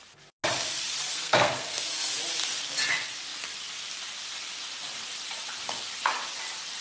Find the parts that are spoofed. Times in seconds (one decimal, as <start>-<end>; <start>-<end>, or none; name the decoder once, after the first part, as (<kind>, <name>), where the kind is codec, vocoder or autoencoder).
1.1-2.1 (codec, SNAC)